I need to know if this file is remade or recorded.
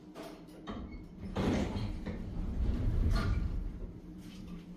remade